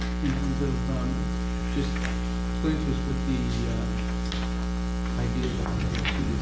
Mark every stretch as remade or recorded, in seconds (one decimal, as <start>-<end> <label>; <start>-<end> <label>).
0.0-5.5 recorded; 5.5-6.4 remade